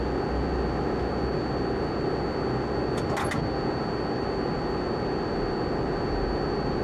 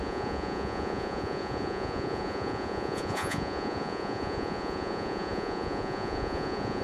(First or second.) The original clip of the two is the first